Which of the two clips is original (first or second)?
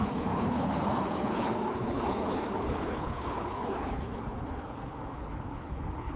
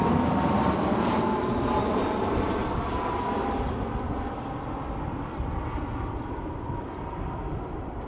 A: second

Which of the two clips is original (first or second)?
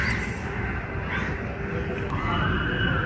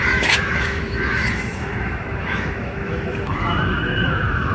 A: first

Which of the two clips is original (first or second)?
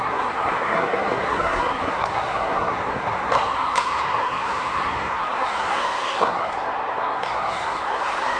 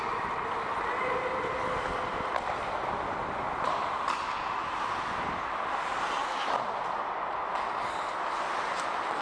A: second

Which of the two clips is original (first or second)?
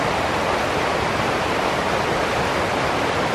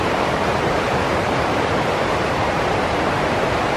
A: first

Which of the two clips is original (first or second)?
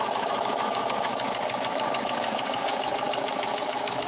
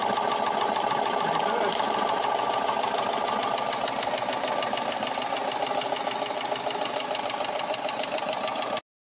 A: second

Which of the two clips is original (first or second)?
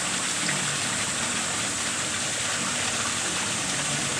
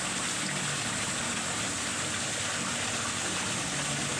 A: second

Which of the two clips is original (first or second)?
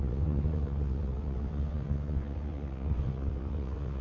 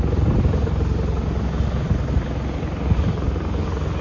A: second